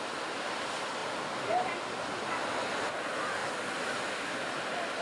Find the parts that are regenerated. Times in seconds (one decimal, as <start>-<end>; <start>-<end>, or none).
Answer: none